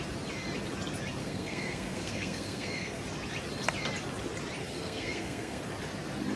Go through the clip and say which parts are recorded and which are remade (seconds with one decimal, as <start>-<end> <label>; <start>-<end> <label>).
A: 0.0-1.2 recorded; 1.2-3.0 remade; 3.0-4.6 recorded; 4.6-5.6 remade; 5.6-6.4 recorded